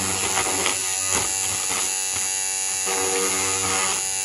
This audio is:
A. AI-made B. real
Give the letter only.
B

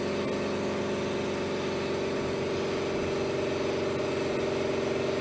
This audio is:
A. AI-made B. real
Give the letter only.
B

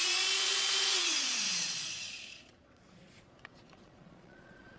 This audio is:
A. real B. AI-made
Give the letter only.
B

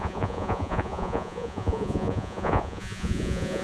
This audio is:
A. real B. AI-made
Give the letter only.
B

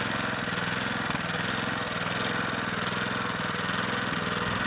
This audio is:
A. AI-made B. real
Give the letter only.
B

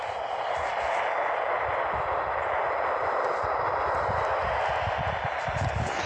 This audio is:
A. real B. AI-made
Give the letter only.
A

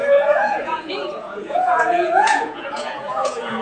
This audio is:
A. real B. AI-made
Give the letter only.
B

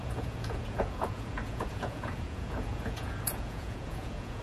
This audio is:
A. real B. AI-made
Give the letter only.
B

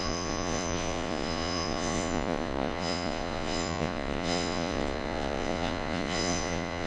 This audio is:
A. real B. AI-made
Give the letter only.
B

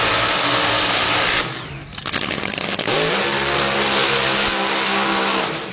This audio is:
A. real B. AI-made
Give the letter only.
A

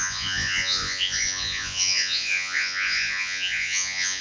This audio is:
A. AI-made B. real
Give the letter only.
A